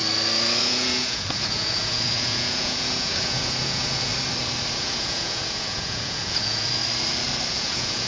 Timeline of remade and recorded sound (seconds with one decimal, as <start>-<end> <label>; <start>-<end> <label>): 0.0-0.6 recorded; 0.6-4.1 remade; 4.1-4.7 recorded; 4.7-6.8 remade; 6.8-7.5 recorded; 7.5-8.1 remade